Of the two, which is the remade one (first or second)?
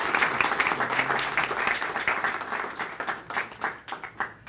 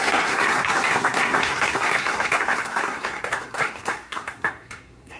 second